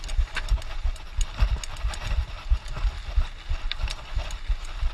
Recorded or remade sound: recorded